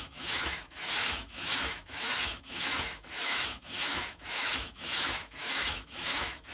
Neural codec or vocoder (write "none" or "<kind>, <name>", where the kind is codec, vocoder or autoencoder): autoencoder, DAC-VAE